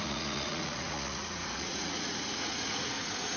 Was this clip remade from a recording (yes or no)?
yes